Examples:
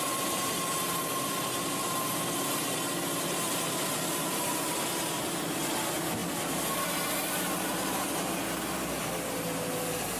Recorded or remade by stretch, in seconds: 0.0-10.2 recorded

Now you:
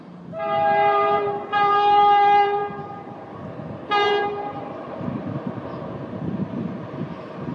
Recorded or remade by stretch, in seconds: 0.0-7.5 remade

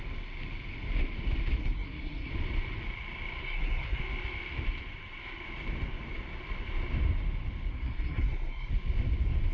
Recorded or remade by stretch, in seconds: 0.0-1.6 recorded; 1.6-2.3 remade; 2.3-3.4 recorded; 3.4-4.0 remade; 4.0-7.7 recorded; 7.7-8.7 remade; 8.7-9.5 recorded